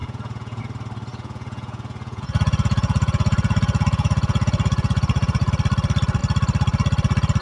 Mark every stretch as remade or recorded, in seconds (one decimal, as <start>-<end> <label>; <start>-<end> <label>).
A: 0.0-0.6 remade; 0.6-1.1 recorded; 1.1-5.5 remade; 5.5-7.4 recorded